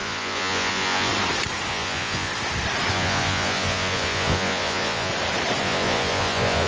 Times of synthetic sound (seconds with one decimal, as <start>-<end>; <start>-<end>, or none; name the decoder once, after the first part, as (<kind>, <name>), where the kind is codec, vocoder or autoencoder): 0.0-1.1 (vocoder, Vocos); 1.7-2.3; 2.9-5.1; 5.6-6.7

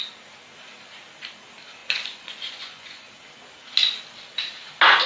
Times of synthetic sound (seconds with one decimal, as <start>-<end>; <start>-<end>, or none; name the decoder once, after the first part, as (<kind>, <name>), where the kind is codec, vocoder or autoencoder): 1.8-3.1 (vocoder, Vocos)

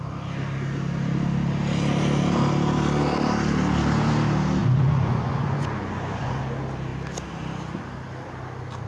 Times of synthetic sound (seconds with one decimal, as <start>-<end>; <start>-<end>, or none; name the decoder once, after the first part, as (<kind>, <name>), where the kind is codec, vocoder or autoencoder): 4.6-6.4 (vocoder, Vocos)

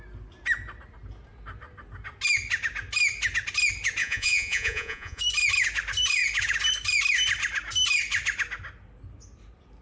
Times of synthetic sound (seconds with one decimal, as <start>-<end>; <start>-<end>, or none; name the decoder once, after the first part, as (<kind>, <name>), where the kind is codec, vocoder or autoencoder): 4.0-5.2 (vocoder, Vocos)

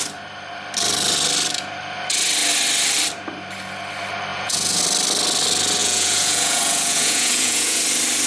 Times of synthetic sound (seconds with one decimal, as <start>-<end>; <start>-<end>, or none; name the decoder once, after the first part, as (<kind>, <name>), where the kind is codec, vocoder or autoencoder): 4.3-4.8 (vocoder, Vocos); 5.8-7.8

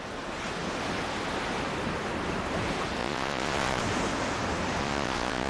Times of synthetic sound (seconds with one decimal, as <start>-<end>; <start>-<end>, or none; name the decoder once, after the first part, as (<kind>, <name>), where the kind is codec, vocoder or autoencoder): 3.0-3.8 (vocoder, Vocos); 4.8-5.5

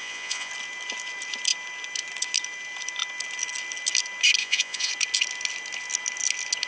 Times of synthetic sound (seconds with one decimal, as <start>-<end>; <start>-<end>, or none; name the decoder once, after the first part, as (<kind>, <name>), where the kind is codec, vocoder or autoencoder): 0.0-0.5 (vocoder, Vocos); 4.4-4.9